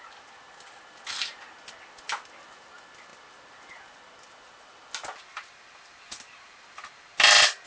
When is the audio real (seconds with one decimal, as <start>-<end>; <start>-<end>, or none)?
0.0-7.7